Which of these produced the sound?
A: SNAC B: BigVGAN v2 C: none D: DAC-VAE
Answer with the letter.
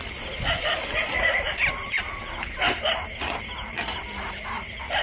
B